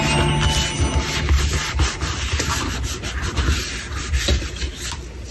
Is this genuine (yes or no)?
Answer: yes